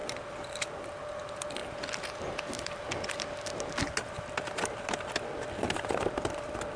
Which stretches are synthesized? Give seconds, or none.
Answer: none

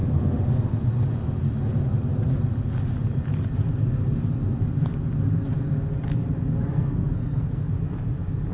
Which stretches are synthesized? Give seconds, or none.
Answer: 6.7-7.7 (codec, SNAC)

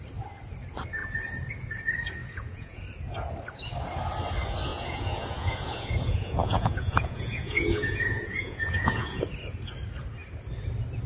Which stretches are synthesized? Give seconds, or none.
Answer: 2.2-2.8 (vocoder, Vocos); 4.7-9.2

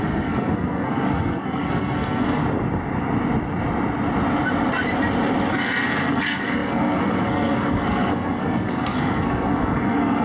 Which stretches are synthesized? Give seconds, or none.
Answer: 0.0-2.4 (codec, SNAC); 5.5-10.2

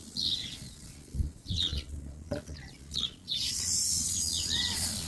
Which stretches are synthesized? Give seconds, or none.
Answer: 0.0-5.1 (vocoder, Vocos)

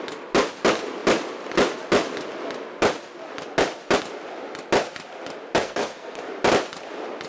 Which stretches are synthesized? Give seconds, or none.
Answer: 5.6-6.2 (codec, SNAC)

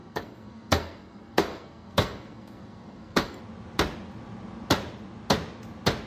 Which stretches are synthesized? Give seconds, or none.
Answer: 0.0-3.4 (codec, SNAC)

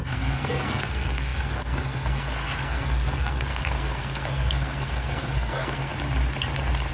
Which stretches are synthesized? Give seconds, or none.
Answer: 0.0-5.9 (codec, SNAC)